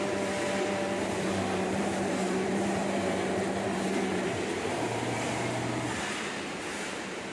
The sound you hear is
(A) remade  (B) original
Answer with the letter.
A